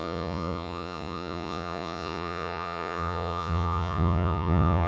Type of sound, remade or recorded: remade